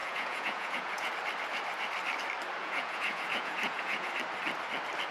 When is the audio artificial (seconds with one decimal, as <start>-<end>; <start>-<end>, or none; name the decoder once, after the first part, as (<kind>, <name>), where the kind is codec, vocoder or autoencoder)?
0.0-1.1 (vocoder, Vocos); 2.6-4.1